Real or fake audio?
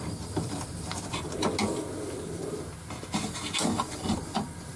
real